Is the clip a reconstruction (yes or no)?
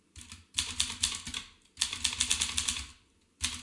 no